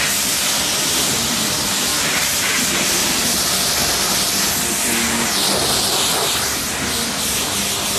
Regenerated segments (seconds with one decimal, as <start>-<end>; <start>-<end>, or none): 1.9-2.6; 3.0-3.6